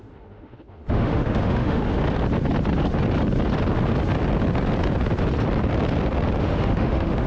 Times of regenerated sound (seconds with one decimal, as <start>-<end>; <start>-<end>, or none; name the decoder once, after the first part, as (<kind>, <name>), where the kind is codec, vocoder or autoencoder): 0.0-2.0 (autoencoder, DAC-VAE); 6.4-7.3